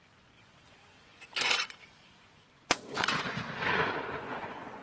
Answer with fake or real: fake